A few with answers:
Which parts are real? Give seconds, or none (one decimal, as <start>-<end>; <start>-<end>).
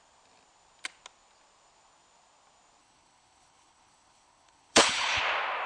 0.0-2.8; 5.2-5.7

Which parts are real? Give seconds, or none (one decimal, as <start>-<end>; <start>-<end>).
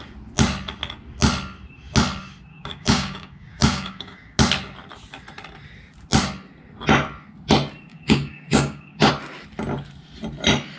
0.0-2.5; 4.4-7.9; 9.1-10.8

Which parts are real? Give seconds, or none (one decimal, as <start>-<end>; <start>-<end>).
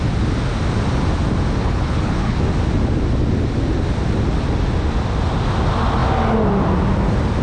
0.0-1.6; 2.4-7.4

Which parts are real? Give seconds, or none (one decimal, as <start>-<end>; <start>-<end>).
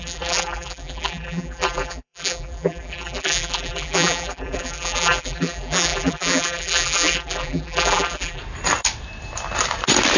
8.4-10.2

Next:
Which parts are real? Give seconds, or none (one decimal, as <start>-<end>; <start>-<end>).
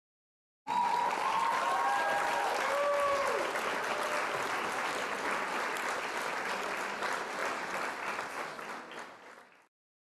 0.0-10.1